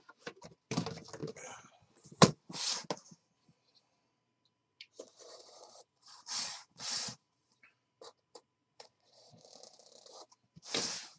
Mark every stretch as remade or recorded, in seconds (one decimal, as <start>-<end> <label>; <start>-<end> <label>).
0.0-1.2 recorded; 1.2-2.4 remade; 2.4-4.6 recorded; 4.6-9.5 remade; 9.5-11.2 recorded